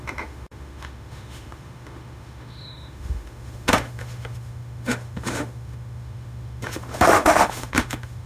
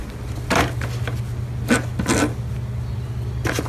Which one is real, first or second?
second